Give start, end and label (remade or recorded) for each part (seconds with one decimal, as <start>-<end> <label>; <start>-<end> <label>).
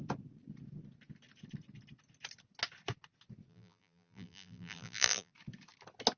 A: 0.0-3.5 recorded; 3.5-5.3 remade; 5.3-6.2 recorded